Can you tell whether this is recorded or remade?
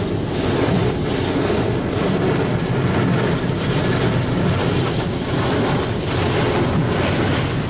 recorded